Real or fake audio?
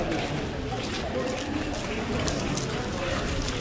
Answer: real